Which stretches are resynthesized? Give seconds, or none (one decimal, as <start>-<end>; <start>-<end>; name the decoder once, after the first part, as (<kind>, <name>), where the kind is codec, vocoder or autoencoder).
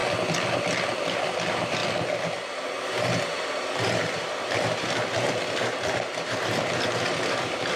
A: 1.1-1.8 (vocoder, BigVGAN v2); 2.4-7.8